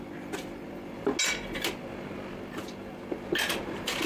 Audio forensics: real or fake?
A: real